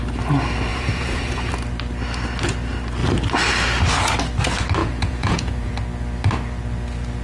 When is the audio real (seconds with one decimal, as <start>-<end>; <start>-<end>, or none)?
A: 0.0-0.7; 1.5-4.8; 5.7-7.2